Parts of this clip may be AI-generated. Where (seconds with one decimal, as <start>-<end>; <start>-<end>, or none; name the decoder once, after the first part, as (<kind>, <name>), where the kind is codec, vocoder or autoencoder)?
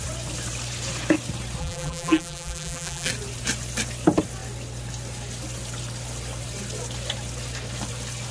1.6-3.1 (vocoder, BigVGAN v2)